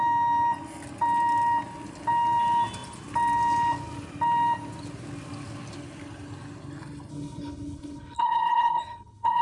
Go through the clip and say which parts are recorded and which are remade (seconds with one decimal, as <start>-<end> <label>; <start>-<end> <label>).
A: 0.0-7.1 recorded; 7.1-9.4 remade